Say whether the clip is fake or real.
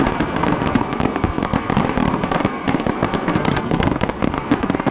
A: fake